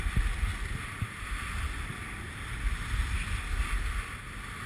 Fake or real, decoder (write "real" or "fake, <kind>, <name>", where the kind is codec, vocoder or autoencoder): real